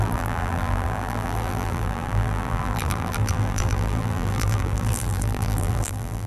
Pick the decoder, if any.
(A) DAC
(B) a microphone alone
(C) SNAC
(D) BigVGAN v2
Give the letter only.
D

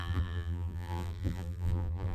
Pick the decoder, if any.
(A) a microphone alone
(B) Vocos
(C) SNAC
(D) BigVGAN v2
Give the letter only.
D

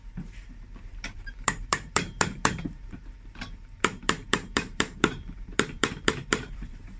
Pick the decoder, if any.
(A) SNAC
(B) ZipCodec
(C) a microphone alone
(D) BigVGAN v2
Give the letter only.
D